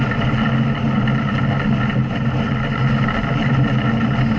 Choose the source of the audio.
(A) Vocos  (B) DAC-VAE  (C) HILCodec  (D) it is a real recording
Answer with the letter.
D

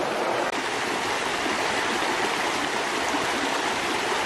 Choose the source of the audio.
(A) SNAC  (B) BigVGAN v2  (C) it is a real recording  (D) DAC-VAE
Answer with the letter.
C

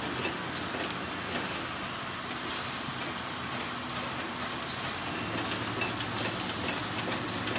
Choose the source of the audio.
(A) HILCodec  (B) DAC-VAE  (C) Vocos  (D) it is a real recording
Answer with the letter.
D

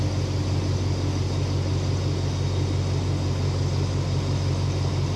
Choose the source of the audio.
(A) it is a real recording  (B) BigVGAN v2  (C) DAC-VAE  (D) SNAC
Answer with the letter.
A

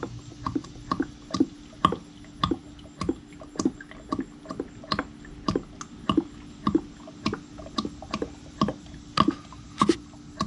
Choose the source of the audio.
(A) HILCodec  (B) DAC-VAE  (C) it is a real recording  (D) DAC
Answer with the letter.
C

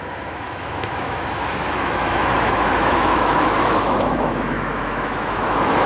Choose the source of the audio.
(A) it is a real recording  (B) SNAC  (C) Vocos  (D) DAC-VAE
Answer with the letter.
D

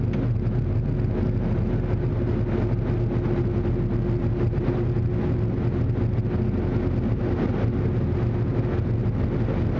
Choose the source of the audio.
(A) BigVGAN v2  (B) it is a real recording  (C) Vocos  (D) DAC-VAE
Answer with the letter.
B